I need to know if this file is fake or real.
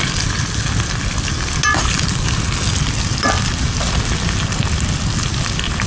real